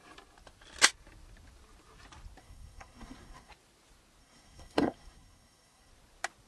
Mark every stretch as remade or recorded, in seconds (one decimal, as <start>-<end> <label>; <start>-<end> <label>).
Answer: 0.0-2.4 recorded; 2.4-3.5 remade; 3.5-4.2 recorded; 4.2-5.9 remade; 5.9-6.5 recorded